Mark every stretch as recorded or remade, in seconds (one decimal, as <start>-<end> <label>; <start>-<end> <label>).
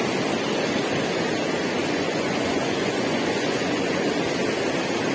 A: 0.0-1.8 recorded; 1.8-4.1 remade; 4.1-5.1 recorded